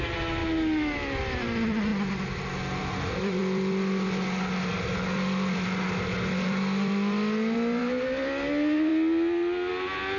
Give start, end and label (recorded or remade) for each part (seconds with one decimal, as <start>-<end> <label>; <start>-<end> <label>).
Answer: 0.0-10.2 recorded